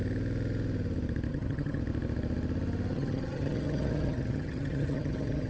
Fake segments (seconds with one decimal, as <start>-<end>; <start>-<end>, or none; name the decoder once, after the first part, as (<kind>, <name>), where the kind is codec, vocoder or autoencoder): 1.3-1.8 (vocoder, HiFi-GAN); 2.9-5.5